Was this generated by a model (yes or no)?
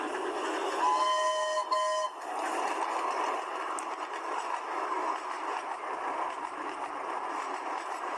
no